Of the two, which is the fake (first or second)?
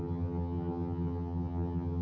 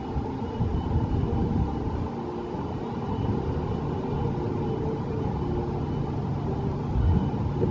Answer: first